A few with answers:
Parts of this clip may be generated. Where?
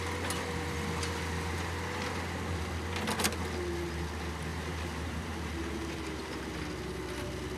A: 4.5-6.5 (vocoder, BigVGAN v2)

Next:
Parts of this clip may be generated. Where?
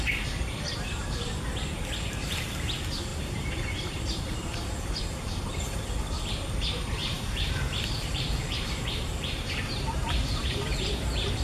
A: 3.1-5.9 (vocoder, BigVGAN v2); 7.0-11.4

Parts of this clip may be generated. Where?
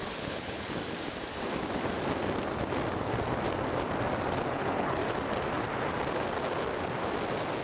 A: 0.0-0.8 (codec, HILCodec); 4.5-5.0